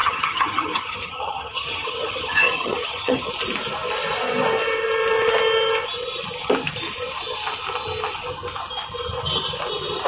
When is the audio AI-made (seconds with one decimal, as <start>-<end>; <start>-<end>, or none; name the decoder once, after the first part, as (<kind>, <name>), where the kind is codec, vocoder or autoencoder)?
0.0-3.3 (vocoder, HiFi-GAN)